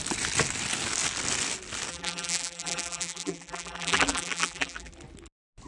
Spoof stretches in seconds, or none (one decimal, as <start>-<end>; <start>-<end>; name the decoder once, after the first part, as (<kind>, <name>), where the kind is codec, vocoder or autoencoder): 1.9-4.9 (vocoder, BigVGAN v2)